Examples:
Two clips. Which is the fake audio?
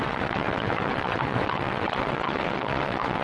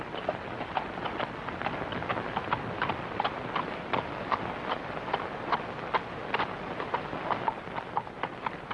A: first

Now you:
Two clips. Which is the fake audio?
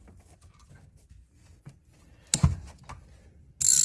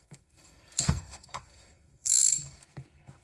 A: second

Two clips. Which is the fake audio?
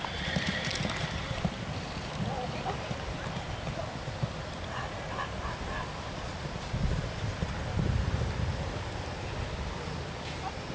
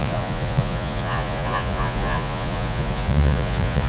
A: second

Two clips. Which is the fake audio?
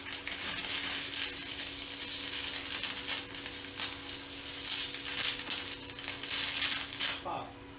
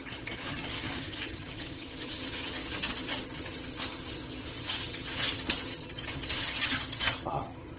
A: second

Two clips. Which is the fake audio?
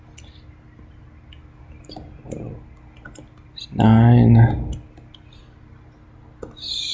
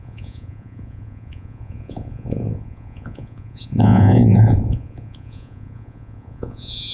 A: second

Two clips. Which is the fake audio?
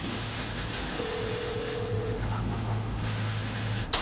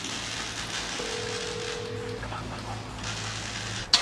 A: first